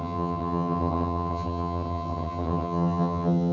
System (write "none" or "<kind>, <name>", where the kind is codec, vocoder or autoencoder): vocoder, HiFi-GAN